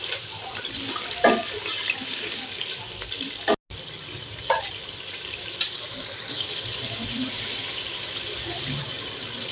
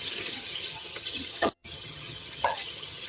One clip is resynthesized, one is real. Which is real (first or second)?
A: first